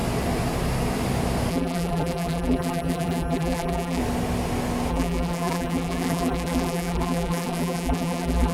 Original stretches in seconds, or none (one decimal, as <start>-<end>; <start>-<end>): 0.0-1.5; 4.0-4.9